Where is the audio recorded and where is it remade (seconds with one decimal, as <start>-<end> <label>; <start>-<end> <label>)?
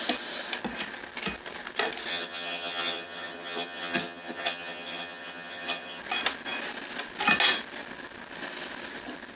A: 0.0-2.1 recorded; 2.1-6.0 remade; 6.0-9.4 recorded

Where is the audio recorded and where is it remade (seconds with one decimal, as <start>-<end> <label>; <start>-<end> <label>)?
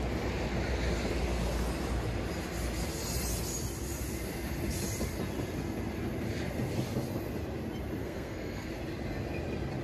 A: 0.0-8.0 recorded; 8.0-8.7 remade; 8.7-9.8 recorded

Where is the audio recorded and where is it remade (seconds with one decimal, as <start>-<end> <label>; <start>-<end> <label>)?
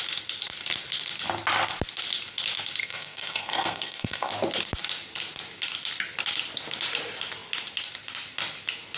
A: 0.0-2.8 recorded; 2.8-4.3 remade; 4.3-9.0 recorded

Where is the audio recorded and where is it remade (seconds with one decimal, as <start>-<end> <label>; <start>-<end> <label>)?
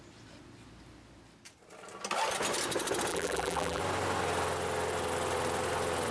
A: 0.0-3.1 recorded; 3.1-3.8 remade; 3.8-6.1 recorded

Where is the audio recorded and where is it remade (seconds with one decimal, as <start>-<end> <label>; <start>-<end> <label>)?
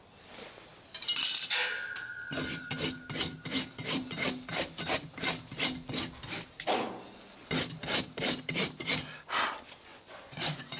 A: 0.0-9.9 recorded; 9.9-10.8 remade